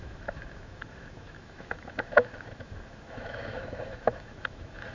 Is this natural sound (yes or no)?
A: no